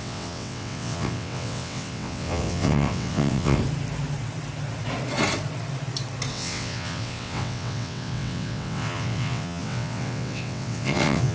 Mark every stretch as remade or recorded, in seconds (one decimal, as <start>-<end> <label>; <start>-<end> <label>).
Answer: 0.0-3.6 remade; 3.6-6.3 recorded; 6.3-11.3 remade